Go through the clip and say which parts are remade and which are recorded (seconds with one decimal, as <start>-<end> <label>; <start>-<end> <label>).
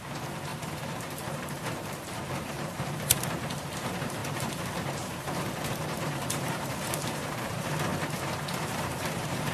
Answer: 0.0-7.9 remade; 7.9-8.5 recorded; 8.5-9.5 remade